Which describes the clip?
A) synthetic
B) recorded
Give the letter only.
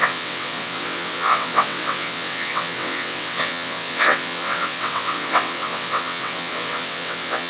A